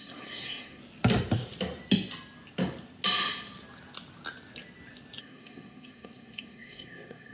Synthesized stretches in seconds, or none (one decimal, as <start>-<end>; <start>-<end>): 0.0-0.8; 5.2-7.3